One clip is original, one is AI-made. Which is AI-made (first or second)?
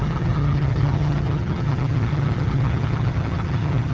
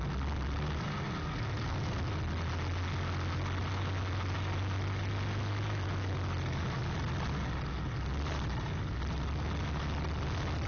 first